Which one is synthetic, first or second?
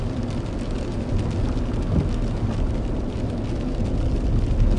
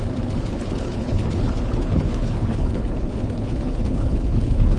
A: second